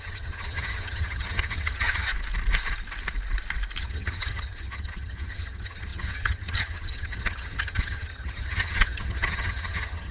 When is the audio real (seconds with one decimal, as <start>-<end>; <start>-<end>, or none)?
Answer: 2.1-3.8